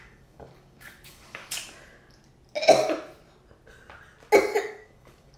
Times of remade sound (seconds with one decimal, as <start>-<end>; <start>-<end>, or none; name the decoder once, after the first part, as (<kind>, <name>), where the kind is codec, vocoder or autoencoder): 0.0-1.4 (codec, DAC); 4.6-5.4